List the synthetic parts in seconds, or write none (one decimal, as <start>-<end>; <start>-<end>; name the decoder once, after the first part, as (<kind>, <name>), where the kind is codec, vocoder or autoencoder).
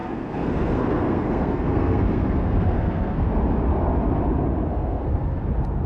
0.0-3.3 (codec, SNAC); 4.7-5.4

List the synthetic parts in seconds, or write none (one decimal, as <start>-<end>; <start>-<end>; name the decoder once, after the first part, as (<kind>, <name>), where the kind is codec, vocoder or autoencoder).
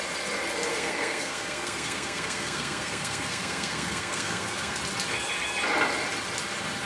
0.7-4.8 (codec, SNAC)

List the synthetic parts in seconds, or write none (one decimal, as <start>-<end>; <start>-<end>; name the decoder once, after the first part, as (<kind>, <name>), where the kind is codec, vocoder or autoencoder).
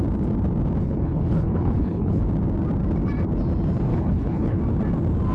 0.8-2.2 (codec, HILCodec); 3.9-4.6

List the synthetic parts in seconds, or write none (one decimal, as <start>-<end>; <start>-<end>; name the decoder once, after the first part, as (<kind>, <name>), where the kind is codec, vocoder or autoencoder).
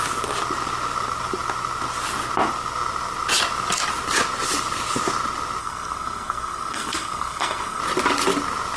5.6-7.8 (codec, SNAC)